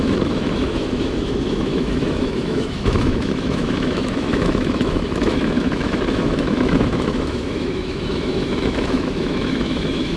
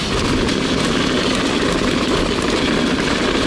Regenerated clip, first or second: first